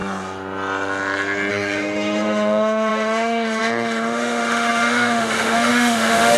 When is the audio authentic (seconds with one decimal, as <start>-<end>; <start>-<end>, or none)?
0.0-1.5